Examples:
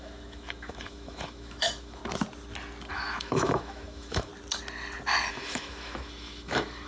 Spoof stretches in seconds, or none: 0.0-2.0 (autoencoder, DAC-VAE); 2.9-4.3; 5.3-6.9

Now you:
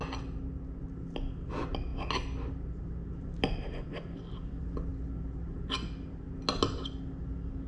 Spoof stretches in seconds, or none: none